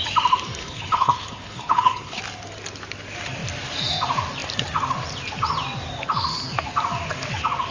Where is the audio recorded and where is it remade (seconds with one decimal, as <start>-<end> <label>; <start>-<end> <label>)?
0.0-0.6 recorded; 0.6-2.2 remade; 2.2-7.7 recorded